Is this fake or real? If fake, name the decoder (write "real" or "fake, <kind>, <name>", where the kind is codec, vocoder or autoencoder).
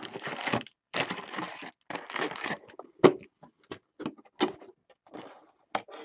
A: real